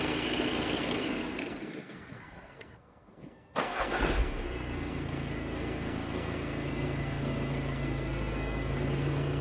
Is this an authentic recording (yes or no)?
no